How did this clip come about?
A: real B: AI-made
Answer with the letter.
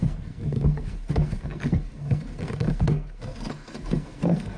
B